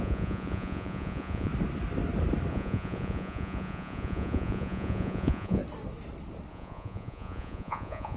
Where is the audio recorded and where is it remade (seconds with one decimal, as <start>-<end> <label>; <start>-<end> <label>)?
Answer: 0.0-1.5 remade; 1.5-2.5 recorded; 2.5-5.6 remade; 5.6-6.5 recorded; 6.5-8.2 remade